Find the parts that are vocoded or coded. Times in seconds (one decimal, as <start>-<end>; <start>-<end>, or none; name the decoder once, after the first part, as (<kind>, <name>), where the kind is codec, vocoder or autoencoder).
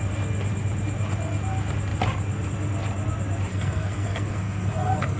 3.5-5.2 (codec, SNAC)